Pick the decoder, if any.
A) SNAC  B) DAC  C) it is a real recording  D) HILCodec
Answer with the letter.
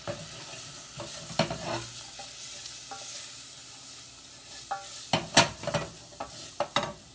C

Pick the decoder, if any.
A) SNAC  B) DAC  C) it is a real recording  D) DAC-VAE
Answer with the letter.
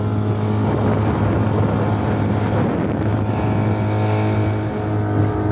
C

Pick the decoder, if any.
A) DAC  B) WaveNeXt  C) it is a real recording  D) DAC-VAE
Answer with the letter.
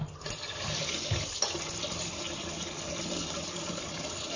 C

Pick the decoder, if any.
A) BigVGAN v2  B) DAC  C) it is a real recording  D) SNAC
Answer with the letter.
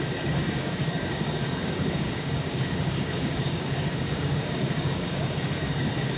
B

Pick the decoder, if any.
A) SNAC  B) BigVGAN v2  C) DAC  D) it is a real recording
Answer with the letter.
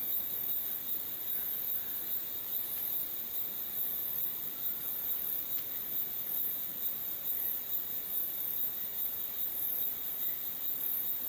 D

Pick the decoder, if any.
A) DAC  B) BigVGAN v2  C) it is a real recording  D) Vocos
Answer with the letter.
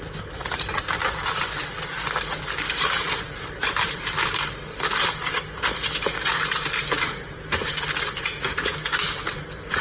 C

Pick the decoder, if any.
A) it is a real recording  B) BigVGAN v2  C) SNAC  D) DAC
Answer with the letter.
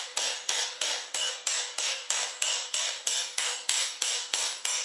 D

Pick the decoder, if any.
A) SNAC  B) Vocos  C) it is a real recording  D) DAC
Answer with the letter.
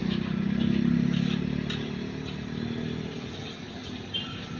C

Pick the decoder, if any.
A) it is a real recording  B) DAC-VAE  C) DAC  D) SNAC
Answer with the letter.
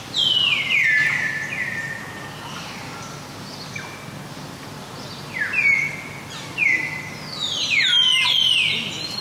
A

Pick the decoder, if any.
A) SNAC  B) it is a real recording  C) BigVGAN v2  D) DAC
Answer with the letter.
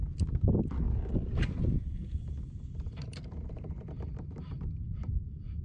B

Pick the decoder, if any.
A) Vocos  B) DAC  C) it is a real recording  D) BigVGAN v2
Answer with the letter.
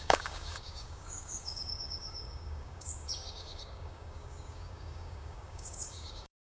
B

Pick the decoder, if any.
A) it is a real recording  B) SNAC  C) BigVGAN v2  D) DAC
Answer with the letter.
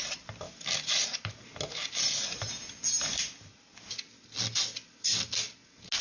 A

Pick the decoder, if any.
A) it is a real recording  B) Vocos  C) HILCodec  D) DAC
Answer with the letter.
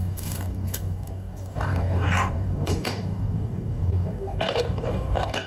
D